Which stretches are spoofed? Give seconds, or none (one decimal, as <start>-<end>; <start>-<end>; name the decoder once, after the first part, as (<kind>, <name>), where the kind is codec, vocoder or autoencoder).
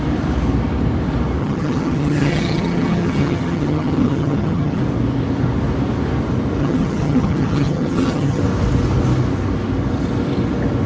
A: 1.4-4.8 (vocoder, HiFi-GAN); 6.6-8.4